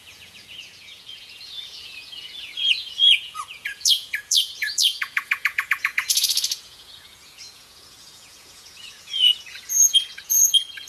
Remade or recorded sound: remade